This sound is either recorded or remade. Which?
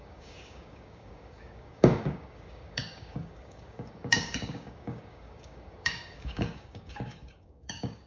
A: remade